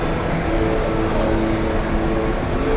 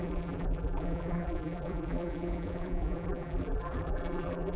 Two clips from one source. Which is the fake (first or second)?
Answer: second